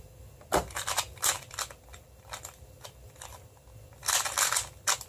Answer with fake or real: real